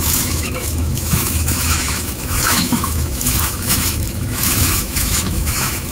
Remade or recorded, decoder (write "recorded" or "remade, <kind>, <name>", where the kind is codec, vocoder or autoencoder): remade, autoencoder, DAC-VAE